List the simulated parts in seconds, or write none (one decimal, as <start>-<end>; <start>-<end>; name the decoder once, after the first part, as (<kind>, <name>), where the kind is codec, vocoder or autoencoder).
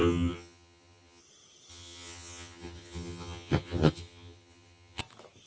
0.0-1.2 (vocoder, HiFi-GAN); 1.7-5.0